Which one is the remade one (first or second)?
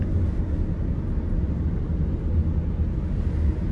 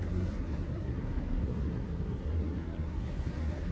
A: second